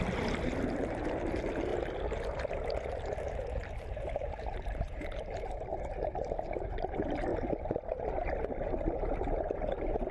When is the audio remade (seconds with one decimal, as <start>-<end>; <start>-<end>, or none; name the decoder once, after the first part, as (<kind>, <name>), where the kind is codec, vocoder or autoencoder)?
0.0-1.7 (vocoder, BigVGAN v2); 3.6-5.7; 6.3-7.3; 8.0-10.1